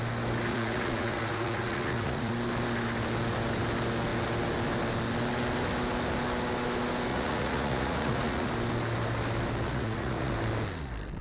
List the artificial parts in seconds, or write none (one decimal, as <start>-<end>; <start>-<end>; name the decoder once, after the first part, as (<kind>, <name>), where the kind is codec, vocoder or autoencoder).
0.5-2.3 (vocoder, Vocos); 7.1-8.5; 9.7-10.3